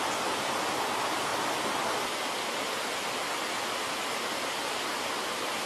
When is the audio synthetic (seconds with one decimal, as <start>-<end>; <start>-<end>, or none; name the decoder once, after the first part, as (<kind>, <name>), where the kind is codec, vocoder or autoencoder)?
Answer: none